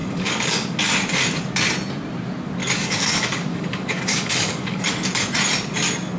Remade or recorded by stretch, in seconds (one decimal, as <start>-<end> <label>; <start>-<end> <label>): 0.0-0.8 remade; 0.8-2.6 recorded; 2.6-4.9 remade; 4.9-6.2 recorded